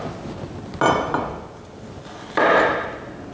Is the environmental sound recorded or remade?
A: recorded